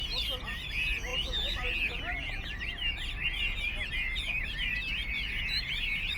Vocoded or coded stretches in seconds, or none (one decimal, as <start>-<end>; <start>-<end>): none